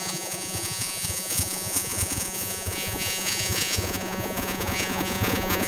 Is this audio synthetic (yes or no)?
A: yes